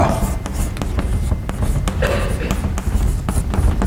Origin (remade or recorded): recorded